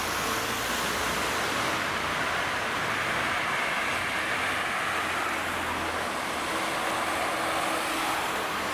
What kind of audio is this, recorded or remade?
recorded